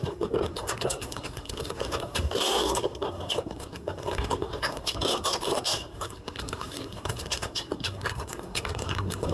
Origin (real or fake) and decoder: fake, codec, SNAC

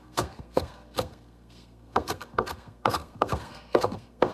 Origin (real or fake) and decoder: fake, codec, SNAC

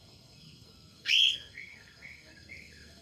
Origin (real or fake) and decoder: fake, codec, SNAC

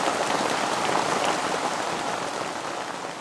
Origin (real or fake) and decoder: real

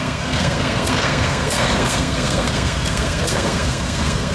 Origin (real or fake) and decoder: fake, codec, SNAC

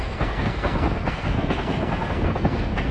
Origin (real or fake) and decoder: fake, codec, SNAC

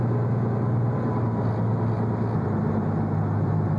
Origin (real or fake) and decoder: real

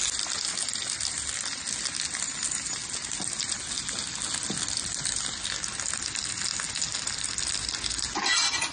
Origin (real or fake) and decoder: real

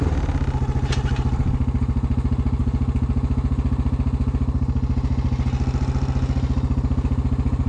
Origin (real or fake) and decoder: real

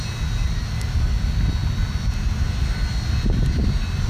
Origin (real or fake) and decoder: real